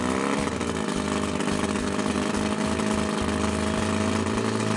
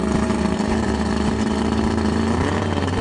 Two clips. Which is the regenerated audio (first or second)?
second